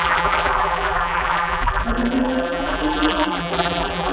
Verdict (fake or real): fake